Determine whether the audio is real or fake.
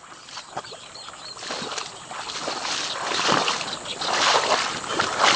real